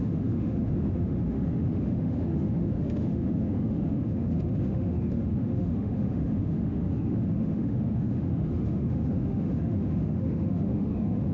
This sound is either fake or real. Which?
fake